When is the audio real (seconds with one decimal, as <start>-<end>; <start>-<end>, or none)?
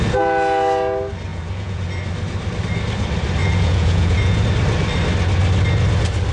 0.0-1.3; 1.8-3.4; 4.4-6.3